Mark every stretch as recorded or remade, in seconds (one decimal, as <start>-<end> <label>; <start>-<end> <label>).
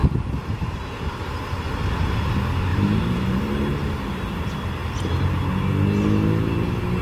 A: 0.0-0.7 remade; 0.7-2.7 recorded; 2.7-3.7 remade; 3.7-7.0 recorded